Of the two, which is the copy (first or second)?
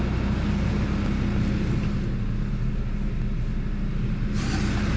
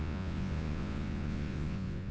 second